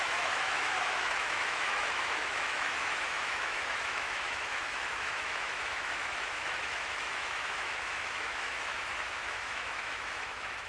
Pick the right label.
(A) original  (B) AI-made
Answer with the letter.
B